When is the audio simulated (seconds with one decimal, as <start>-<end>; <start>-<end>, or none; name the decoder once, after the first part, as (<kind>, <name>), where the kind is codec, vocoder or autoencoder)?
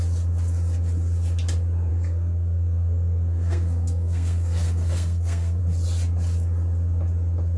1.9-5.6 (codec, SNAC)